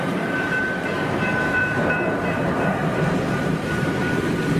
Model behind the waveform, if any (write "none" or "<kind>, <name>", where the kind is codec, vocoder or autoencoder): vocoder, BigVGAN v2